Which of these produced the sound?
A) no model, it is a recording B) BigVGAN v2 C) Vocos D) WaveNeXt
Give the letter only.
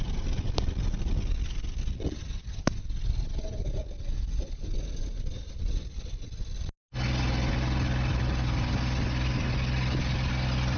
A